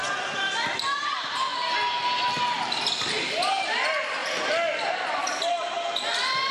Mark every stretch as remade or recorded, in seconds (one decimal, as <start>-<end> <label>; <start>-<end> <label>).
0.0-1.5 remade; 1.5-3.1 recorded; 3.1-6.5 remade